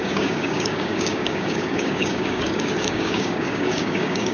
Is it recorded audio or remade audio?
remade